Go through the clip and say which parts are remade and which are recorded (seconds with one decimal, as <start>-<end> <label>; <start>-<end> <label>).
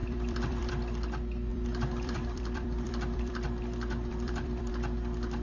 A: 0.0-0.7 remade; 0.7-1.5 recorded; 1.5-4.7 remade; 4.7-5.4 recorded